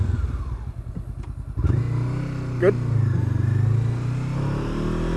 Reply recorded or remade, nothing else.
recorded